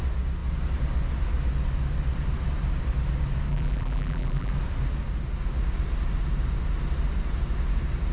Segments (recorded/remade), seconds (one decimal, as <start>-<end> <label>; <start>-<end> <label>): 0.0-3.5 recorded; 3.5-4.5 remade; 4.5-8.1 recorded